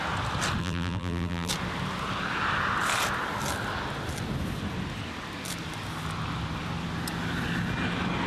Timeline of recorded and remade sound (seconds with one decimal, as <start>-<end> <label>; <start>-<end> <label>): 0.0-0.6 recorded; 0.6-1.5 remade; 1.5-8.3 recorded